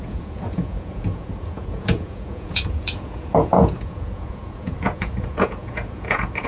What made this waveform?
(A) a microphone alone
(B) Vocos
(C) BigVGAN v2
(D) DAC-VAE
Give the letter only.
B